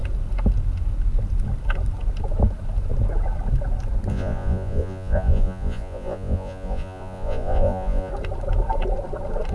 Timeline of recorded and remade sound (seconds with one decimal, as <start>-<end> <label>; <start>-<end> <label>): 0.0-4.1 recorded; 4.1-8.1 remade; 8.1-9.5 recorded